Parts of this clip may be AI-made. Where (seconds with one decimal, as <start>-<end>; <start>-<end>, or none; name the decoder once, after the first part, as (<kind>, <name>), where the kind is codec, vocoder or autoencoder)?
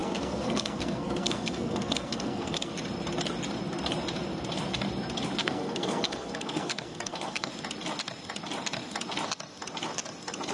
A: 0.0-2.7 (codec, SNAC); 5.4-7.5